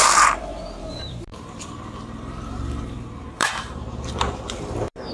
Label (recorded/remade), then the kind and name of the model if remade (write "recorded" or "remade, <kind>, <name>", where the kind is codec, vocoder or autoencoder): remade, vocoder, BigVGAN v2